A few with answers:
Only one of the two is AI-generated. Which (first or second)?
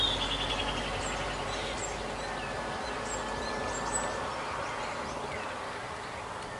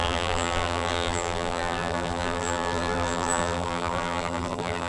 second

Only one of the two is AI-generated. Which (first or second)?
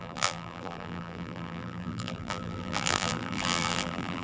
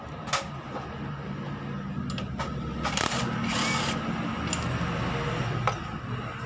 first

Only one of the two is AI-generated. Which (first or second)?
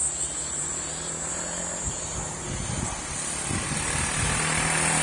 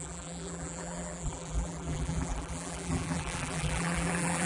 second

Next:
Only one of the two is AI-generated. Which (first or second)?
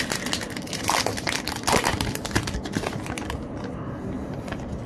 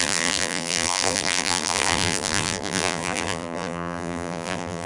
second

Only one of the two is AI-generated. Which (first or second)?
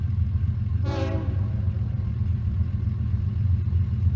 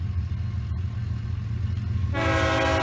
first